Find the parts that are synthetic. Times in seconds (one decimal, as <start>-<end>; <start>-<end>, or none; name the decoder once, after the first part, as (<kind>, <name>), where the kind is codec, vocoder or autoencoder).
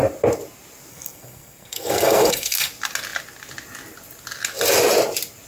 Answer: 0.9-2.7 (codec, SNAC)